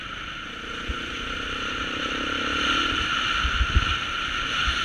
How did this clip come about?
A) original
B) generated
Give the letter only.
B